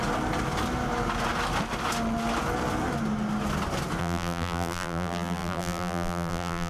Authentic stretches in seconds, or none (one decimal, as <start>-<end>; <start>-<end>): 0.0-4.0